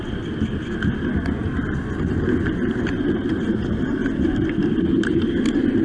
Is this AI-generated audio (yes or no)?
no